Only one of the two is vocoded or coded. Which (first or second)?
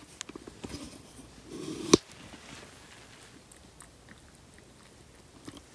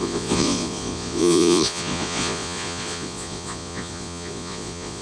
second